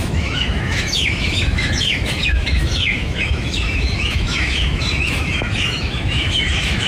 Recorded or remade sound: remade